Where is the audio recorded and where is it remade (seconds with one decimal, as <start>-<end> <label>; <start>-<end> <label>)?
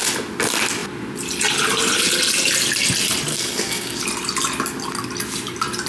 0.0-3.3 recorded; 3.3-4.0 remade; 4.0-5.9 recorded